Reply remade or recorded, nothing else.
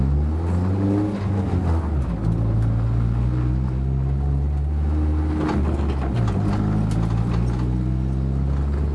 recorded